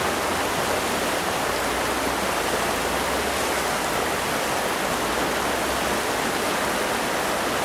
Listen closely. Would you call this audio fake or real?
real